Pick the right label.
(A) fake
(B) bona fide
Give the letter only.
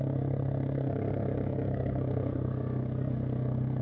A